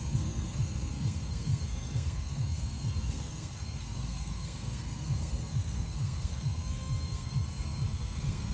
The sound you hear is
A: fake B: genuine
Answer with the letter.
A